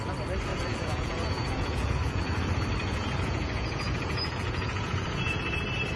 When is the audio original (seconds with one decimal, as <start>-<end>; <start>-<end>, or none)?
0.0-0.5; 2.5-2.9; 5.4-6.0